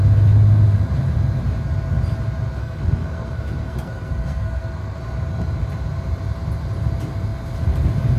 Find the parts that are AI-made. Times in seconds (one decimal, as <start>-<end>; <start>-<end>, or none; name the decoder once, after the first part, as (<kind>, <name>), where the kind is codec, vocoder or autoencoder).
2.6-5.0 (codec, SNAC)